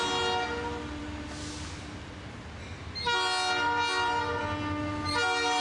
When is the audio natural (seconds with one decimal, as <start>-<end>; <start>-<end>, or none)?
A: 0.0-5.6